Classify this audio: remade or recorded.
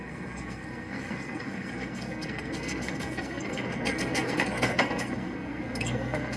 remade